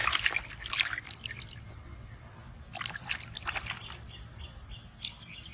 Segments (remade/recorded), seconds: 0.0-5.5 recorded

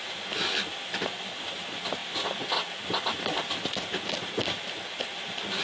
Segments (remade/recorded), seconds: 0.0-5.6 recorded